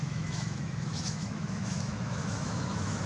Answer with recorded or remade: remade